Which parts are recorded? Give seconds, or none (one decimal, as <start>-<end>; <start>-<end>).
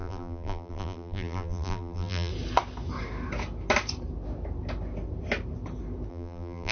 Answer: 2.3-6.1